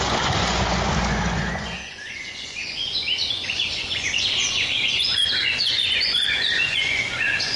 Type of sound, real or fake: fake